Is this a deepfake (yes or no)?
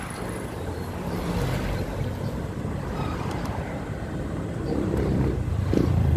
yes